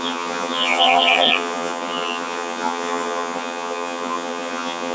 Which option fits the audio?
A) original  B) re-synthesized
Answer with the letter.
B